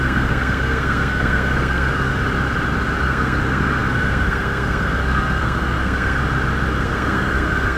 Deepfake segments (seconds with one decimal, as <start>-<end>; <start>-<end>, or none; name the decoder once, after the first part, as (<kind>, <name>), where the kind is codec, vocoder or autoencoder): 0.0-2.1 (codec, SNAC); 3.0-6.2; 6.8-7.8